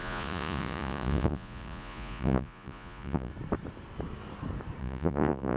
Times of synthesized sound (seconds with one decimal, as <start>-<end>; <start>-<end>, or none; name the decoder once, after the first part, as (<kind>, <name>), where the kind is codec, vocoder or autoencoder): 0.0-3.3 (vocoder, Vocos); 4.8-5.6